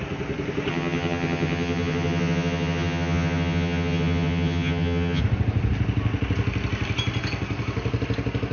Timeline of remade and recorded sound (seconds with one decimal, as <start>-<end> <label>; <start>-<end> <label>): 0.0-0.7 recorded; 0.7-5.2 remade; 5.2-8.5 recorded